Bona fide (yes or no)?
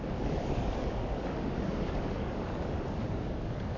no